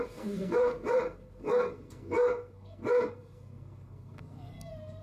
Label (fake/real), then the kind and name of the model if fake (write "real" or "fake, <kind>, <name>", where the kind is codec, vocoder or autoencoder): fake, codec, SNAC